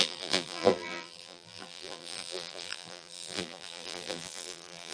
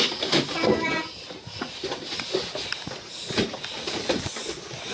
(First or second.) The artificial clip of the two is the first